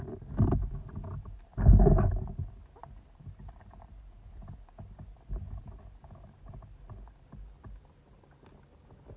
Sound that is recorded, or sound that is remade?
recorded